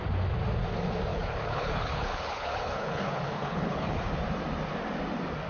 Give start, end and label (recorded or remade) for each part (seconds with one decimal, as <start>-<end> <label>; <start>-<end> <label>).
0.0-1.1 recorded; 1.1-4.1 remade; 4.1-5.5 recorded